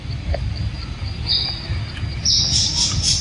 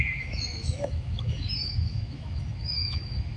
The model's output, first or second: second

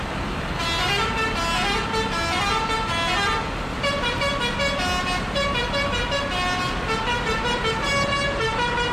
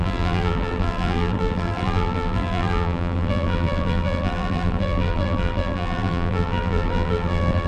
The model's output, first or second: second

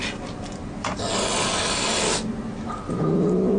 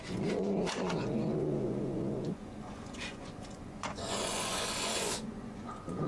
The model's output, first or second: second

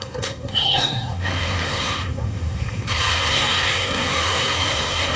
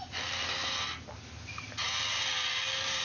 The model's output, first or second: first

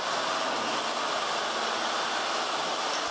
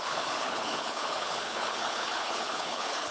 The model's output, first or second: second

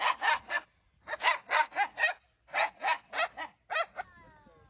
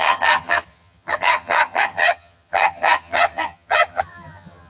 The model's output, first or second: second